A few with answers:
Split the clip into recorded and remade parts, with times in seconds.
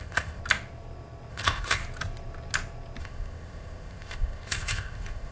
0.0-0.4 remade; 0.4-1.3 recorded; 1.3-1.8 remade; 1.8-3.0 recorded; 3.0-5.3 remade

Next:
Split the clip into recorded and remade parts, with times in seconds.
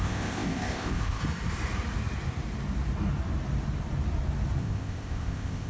0.0-1.2 remade; 1.2-4.6 recorded; 4.6-5.7 remade